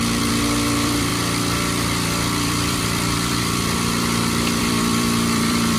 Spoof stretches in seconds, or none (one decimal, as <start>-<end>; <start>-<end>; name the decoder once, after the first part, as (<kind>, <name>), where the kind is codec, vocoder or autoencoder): 0.0-5.8 (vocoder, BigVGAN v2)